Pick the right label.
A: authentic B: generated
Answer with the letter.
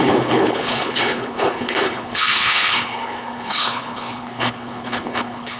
B